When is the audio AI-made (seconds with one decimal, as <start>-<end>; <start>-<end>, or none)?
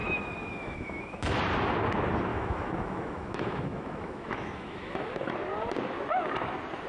0.0-1.3; 2.3-5.3